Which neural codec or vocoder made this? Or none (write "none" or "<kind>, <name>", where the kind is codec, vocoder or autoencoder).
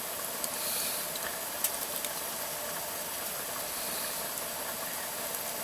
none